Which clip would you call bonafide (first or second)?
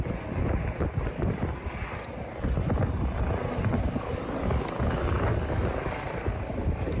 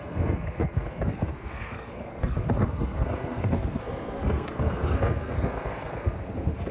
first